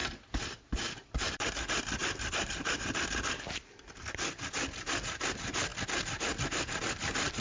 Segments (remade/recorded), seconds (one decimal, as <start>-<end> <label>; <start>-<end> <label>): 0.0-7.4 recorded